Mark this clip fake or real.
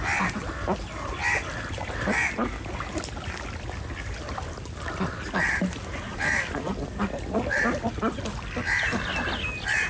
real